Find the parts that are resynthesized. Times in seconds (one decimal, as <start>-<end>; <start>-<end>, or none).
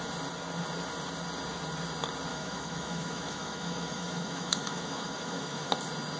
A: 2.3-5.7